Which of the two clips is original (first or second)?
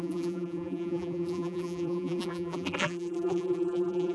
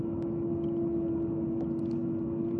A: second